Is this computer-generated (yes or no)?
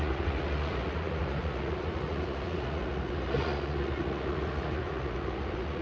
yes